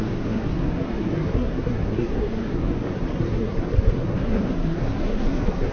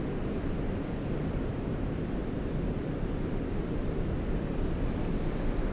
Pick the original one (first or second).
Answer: second